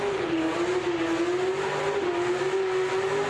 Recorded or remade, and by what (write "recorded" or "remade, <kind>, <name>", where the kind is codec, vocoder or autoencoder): recorded